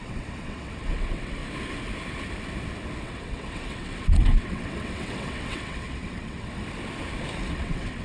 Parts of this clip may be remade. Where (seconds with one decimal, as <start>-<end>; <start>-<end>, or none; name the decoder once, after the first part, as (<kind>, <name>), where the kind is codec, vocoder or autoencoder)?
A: 0.0-1.4 (vocoder, WaveNeXt); 3.0-6.6; 7.5-8.0